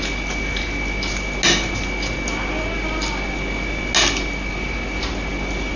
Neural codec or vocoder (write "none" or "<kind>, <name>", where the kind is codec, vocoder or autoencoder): none